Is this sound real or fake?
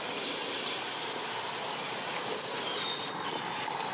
real